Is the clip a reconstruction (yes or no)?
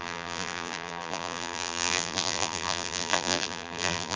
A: yes